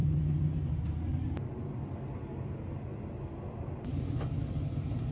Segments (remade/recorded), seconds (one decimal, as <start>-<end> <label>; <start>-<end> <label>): 0.0-3.9 recorded; 3.9-4.5 remade; 4.5-5.1 recorded